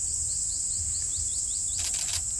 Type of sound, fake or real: fake